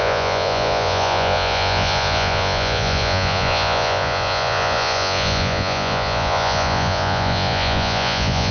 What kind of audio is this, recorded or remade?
remade